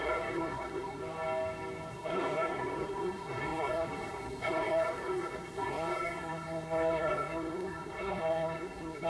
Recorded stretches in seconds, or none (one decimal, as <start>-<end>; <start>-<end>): 1.0-1.9